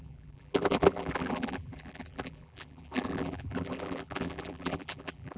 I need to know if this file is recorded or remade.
remade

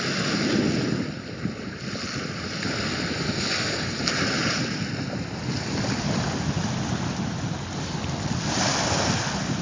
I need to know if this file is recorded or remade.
recorded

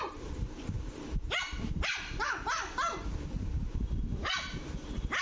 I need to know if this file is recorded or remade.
remade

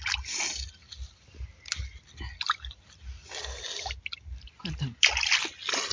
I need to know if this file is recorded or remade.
recorded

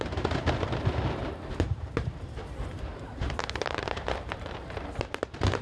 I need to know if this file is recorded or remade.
remade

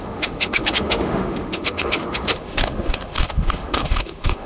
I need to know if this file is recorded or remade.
remade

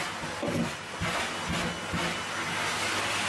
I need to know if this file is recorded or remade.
recorded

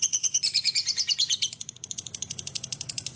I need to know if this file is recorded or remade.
remade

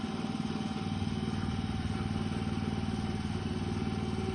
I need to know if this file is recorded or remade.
recorded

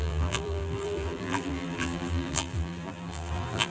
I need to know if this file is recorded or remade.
remade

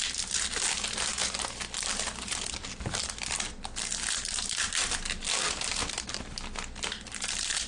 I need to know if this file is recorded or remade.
recorded